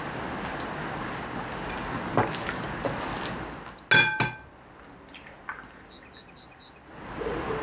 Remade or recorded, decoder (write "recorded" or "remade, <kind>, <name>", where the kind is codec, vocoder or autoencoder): recorded